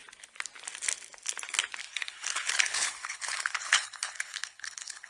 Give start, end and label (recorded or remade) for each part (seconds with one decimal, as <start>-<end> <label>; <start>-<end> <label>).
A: 0.0-1.8 recorded; 1.8-5.1 remade